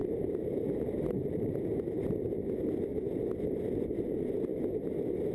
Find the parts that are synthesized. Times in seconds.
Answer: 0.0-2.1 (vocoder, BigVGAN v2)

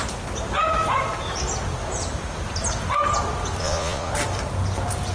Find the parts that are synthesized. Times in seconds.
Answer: 3.6-4.1 (vocoder, Vocos)

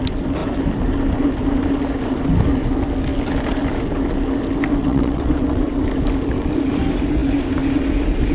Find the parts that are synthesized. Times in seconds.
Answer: 4.8-5.7 (vocoder, WaveNeXt)

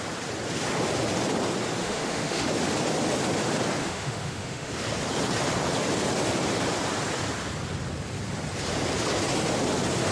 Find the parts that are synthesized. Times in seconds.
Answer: 1.8-2.5 (autoencoder, DAC-VAE); 3.8-4.7

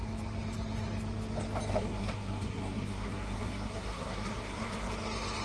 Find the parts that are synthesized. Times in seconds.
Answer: 1.7-4.9 (codec, SNAC)

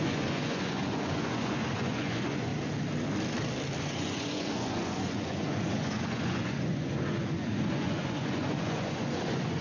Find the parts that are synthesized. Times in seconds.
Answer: 0.0-2.5 (vocoder, Vocos); 3.8-9.6